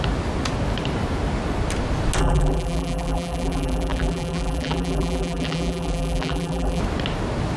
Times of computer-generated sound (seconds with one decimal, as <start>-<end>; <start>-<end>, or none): 2.2-6.8